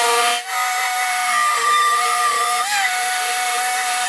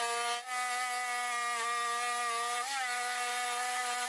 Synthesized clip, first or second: first